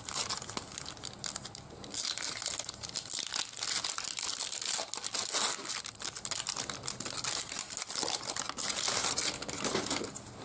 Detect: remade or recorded recorded